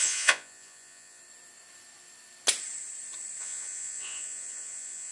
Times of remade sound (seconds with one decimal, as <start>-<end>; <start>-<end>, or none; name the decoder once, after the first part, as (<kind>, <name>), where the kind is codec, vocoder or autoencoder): 0.0-1.2 (vocoder, Vocos); 3.4-5.1